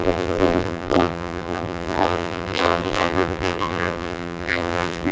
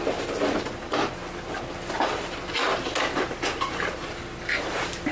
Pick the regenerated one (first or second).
first